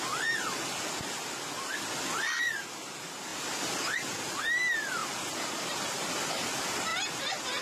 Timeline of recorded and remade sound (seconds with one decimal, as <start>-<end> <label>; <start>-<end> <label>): 0.0-5.0 recorded; 5.0-6.1 remade; 6.1-7.6 recorded